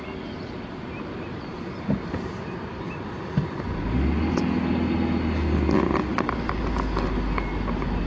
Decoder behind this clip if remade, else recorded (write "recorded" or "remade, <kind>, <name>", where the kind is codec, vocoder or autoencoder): recorded